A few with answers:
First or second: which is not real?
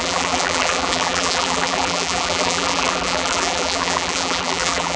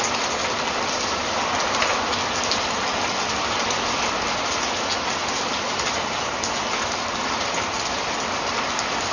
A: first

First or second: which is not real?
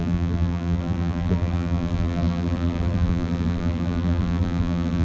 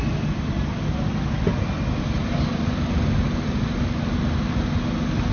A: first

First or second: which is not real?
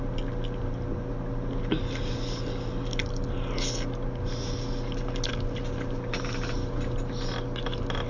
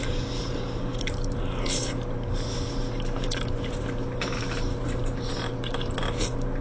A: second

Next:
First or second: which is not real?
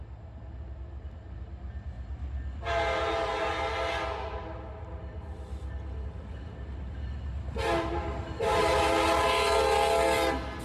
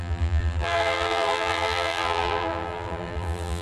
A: second